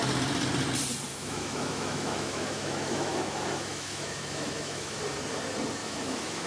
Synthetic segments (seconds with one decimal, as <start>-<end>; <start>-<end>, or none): 1.1-5.0; 5.8-6.5